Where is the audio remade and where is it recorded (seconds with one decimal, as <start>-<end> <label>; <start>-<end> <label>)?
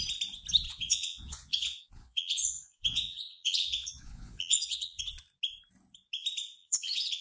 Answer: 0.0-0.7 recorded; 0.7-5.0 remade; 5.0-6.6 recorded; 6.6-7.2 remade